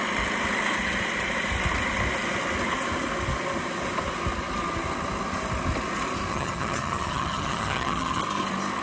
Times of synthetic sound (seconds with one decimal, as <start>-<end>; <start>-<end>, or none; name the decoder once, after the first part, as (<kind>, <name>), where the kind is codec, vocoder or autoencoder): 6.3-8.2 (vocoder, HiFi-GAN)